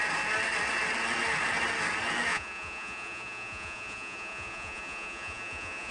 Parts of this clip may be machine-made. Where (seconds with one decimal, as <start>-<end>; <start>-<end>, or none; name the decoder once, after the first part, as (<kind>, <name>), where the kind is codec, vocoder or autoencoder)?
2.3-5.9 (vocoder, Vocos)